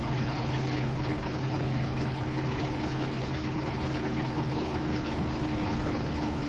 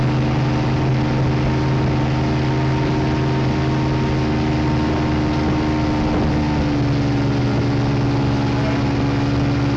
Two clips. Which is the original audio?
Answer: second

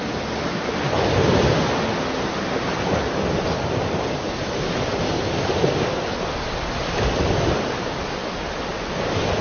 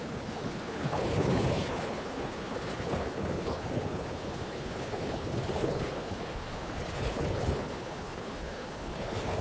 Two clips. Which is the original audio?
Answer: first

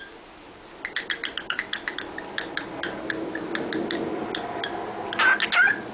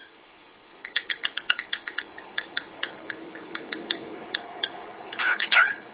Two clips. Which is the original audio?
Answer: first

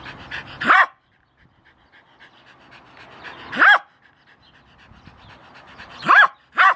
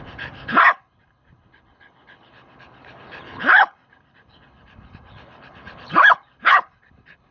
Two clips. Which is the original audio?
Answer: first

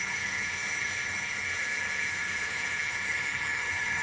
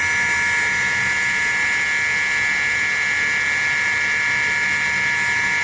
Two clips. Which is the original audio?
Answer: second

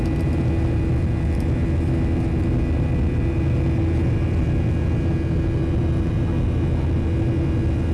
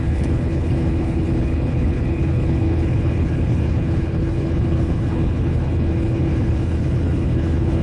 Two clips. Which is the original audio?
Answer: first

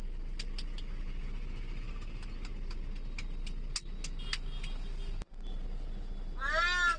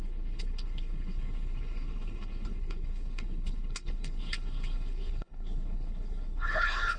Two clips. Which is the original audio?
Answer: first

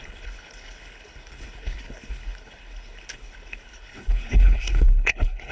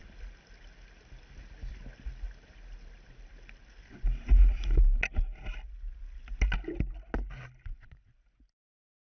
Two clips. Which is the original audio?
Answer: second